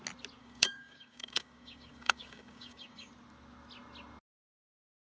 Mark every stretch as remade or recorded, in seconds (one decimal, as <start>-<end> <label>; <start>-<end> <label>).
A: 0.0-0.4 recorded; 0.4-3.1 remade; 3.1-5.0 recorded